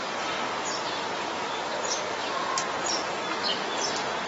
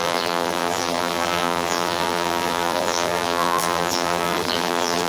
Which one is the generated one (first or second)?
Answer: second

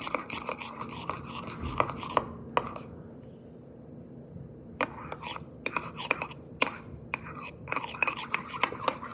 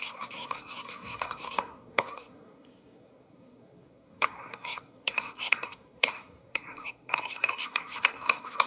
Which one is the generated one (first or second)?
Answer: second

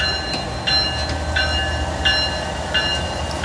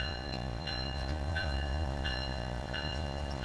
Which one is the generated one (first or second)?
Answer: second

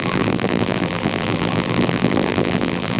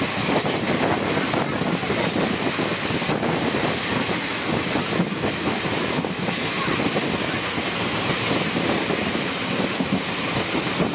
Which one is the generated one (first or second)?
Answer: first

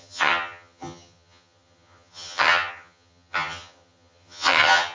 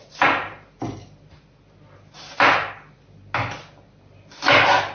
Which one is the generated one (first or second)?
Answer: first